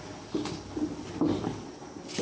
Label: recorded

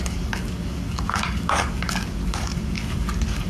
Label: remade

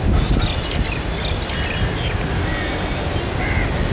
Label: recorded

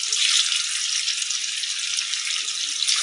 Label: recorded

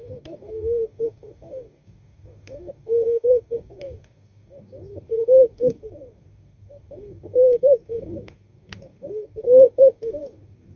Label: remade